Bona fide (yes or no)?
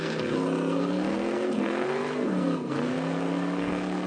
no